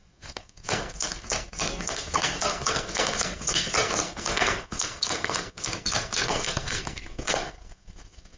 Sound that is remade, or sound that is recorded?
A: remade